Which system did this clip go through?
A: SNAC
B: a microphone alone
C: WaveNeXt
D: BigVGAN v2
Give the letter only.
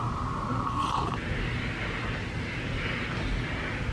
B